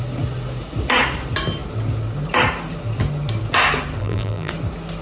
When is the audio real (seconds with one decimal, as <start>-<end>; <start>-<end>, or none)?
0.0-4.0; 4.5-5.0